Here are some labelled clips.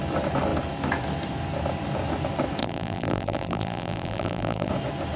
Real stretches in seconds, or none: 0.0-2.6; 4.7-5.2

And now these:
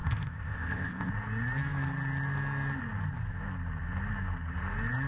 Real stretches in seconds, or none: 1.1-5.1

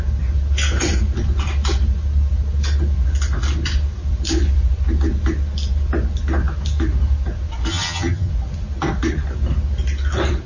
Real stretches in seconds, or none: 0.0-7.7; 8.3-10.5

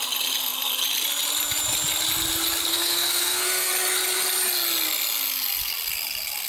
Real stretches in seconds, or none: 0.0-2.7; 3.7-6.5

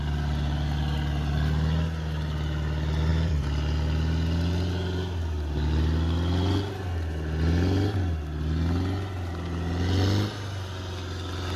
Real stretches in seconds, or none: 0.0-11.6

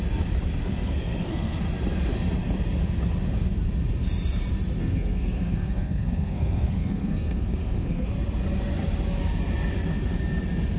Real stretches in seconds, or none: 0.0-0.6; 1.6-4.8; 8.1-10.8